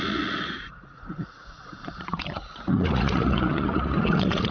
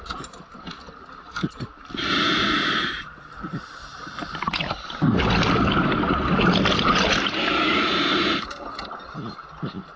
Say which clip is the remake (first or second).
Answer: first